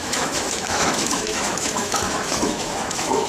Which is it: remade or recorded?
remade